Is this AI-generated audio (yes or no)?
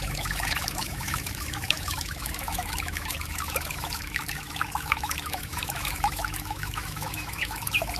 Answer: yes